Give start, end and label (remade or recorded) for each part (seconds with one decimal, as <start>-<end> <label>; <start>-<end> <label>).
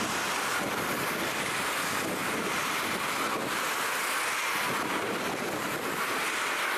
0.0-2.2 recorded; 2.2-6.3 remade; 6.3-6.8 recorded